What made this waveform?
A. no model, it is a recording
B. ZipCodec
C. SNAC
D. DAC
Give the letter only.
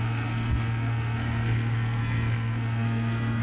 C